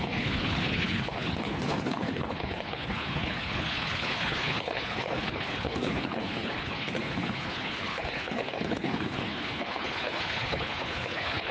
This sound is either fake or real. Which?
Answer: fake